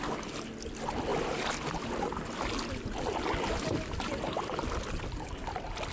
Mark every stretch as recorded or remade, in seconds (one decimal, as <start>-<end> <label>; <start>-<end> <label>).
0.0-5.9 recorded